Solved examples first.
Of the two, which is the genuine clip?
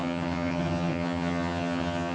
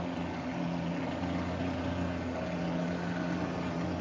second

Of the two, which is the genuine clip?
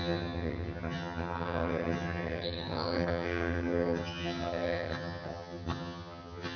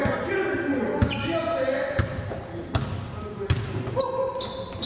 second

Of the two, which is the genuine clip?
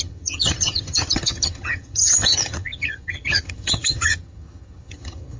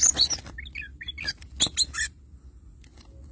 second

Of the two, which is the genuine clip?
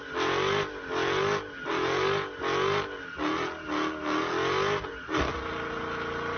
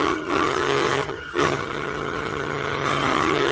first